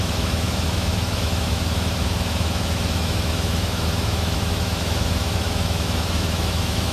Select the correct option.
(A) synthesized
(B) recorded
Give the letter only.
A